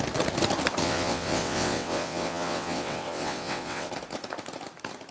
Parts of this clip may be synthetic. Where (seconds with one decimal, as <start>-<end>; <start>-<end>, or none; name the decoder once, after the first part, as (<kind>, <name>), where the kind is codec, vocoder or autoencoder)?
0.8-3.9 (vocoder, WaveNeXt)